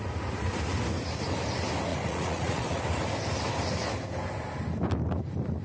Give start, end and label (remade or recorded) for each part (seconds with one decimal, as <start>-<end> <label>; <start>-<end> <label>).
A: 0.0-1.9 recorded; 1.9-2.8 remade; 2.8-5.6 recorded